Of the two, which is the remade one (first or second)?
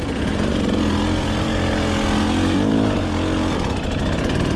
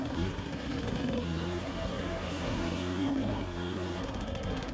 second